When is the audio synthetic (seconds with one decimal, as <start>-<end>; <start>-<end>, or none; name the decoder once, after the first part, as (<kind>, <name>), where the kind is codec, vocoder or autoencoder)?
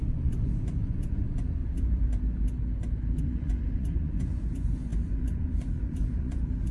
0.0-1.6 (vocoder, Vocos); 3.2-6.7